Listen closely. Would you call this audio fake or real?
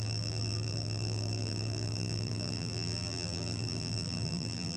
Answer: fake